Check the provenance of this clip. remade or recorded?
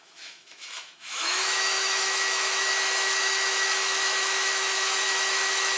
remade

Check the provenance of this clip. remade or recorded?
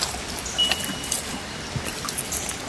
recorded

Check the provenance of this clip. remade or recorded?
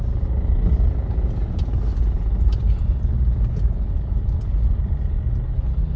recorded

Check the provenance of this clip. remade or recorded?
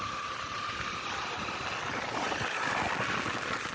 recorded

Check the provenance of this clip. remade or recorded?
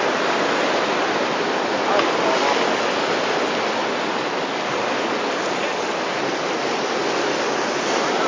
recorded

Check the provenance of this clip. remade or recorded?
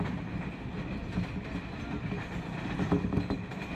recorded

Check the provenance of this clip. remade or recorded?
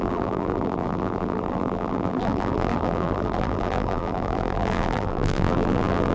remade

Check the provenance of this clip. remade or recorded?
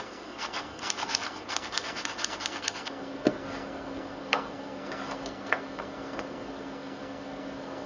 remade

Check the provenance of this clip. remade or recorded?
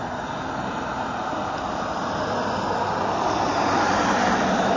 recorded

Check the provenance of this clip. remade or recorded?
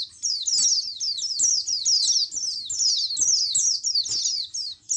recorded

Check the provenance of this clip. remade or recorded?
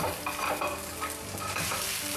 remade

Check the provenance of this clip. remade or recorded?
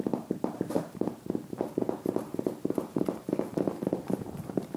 remade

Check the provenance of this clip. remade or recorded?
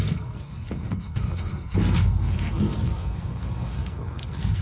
remade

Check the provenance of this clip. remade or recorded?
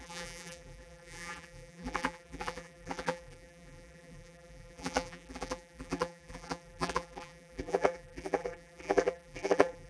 remade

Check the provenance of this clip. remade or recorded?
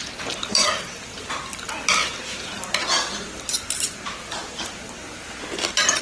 recorded